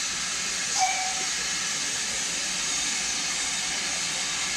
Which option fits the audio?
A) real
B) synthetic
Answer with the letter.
A